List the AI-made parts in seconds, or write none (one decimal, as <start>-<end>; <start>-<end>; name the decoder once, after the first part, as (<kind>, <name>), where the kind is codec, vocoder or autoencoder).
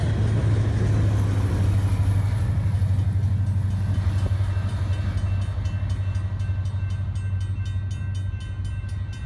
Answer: none